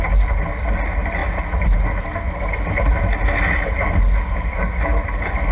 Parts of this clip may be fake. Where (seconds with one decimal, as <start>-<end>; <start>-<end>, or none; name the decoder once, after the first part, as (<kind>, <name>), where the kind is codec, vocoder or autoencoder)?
none